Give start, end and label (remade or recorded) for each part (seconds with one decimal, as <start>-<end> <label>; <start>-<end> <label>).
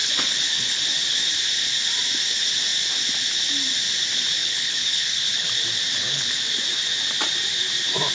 0.0-0.8 remade; 0.8-4.4 recorded; 4.4-5.5 remade; 5.5-5.9 recorded; 5.9-6.4 remade; 6.4-8.1 recorded